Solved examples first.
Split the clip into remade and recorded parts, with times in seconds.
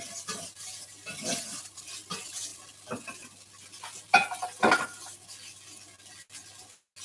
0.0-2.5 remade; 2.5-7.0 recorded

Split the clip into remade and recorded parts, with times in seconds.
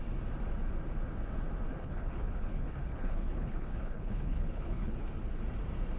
0.0-1.7 recorded; 1.7-5.1 remade; 5.1-6.0 recorded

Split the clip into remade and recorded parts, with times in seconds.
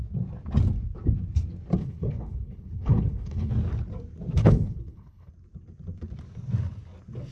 0.0-1.8 recorded; 1.8-3.5 remade; 3.5-4.4 recorded; 4.4-5.3 remade; 5.3-7.3 recorded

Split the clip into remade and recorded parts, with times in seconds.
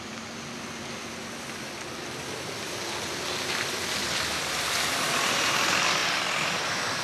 0.0-7.0 recorded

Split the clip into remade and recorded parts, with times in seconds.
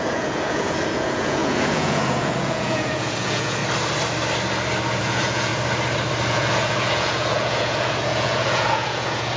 0.0-3.6 remade; 3.6-5.0 recorded; 5.0-5.5 remade; 5.5-6.3 recorded; 6.3-9.4 remade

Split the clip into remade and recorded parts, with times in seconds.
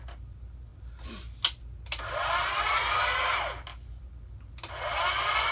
0.0-5.5 recorded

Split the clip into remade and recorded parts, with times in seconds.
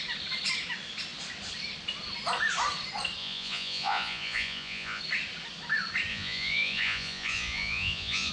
0.0-3.2 recorded; 3.2-5.0 remade; 5.0-6.1 recorded; 6.1-8.3 remade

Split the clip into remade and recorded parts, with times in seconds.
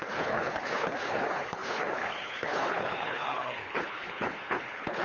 0.0-5.0 remade